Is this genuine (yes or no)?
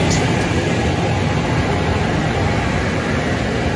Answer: yes